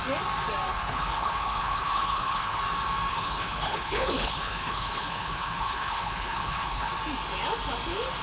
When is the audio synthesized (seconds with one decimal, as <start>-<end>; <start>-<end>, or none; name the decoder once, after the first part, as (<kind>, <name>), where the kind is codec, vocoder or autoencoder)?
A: 0.7-2.6 (codec, HILCodec); 3.1-6.9